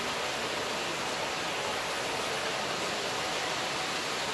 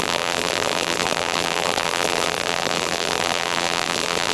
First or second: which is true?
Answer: first